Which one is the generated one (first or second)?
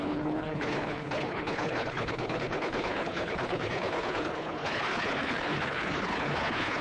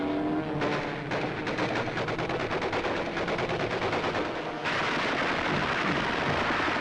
first